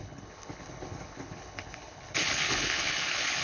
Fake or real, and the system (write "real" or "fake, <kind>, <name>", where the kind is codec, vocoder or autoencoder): fake, codec, HILCodec